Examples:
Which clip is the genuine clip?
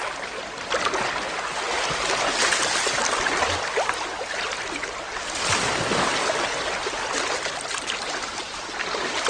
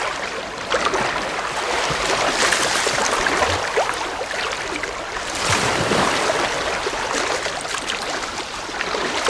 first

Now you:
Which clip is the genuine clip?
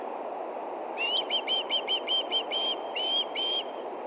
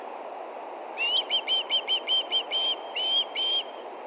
second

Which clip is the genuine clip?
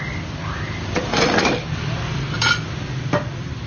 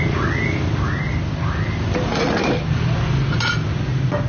second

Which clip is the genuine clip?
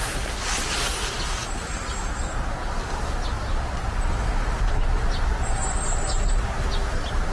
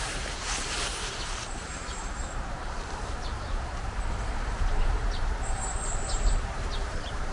first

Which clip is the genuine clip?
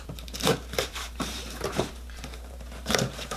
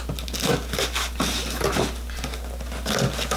second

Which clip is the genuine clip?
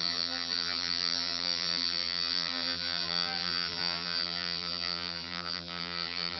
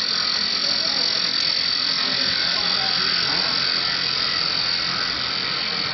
second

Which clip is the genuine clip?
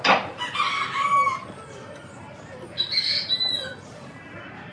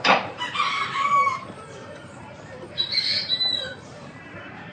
first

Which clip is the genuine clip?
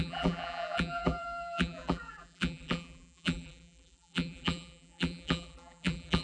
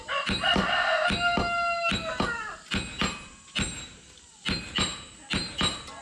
second